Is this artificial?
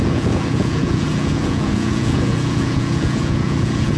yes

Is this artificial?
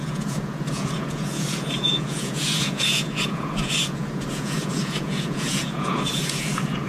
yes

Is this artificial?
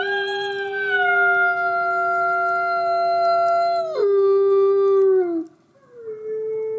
no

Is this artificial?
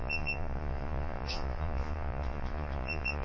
yes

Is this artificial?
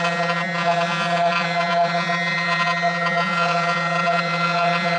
yes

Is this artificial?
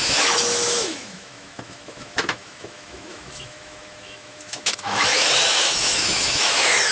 yes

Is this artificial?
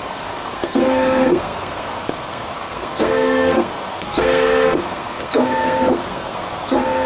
yes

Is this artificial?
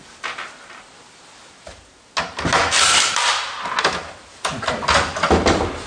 no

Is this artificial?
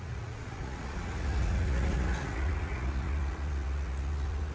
yes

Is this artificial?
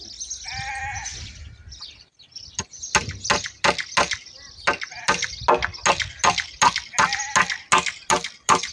no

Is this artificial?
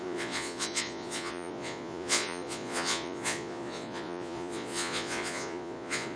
yes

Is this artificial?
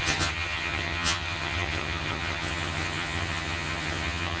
yes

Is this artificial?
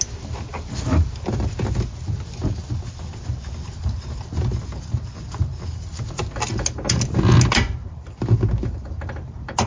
no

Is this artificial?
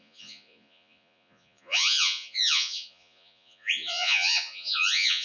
yes